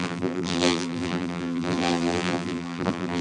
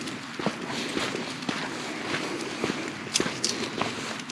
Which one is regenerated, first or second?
first